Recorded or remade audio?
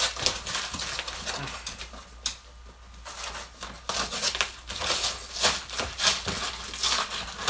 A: recorded